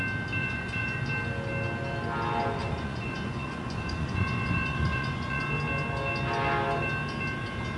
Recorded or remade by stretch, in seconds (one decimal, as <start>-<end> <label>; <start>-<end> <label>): 0.0-0.4 recorded; 0.4-1.0 remade; 1.0-2.6 recorded; 2.6-5.4 remade; 5.4-7.8 recorded